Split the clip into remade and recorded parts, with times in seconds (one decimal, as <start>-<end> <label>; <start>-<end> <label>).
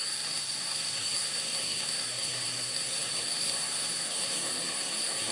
0.0-5.3 remade